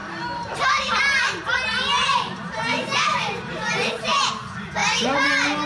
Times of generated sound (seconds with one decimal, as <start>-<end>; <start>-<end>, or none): 0.0-1.0; 2.1-4.3; 4.8-5.3